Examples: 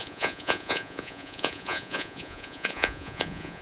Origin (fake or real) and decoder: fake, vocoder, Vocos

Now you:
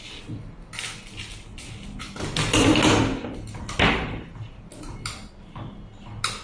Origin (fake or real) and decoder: real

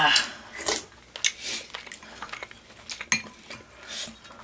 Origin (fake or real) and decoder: real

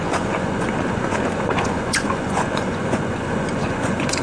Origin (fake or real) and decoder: fake, vocoder, Vocos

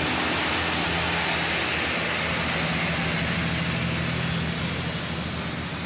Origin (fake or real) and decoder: real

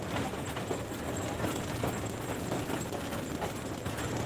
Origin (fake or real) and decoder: real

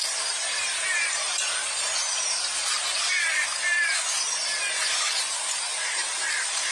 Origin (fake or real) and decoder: fake, vocoder, BigVGAN v2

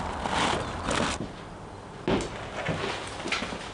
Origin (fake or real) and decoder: real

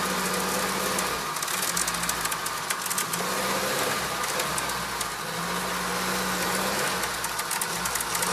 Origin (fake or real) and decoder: real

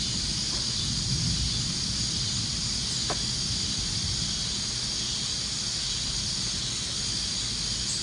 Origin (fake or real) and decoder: real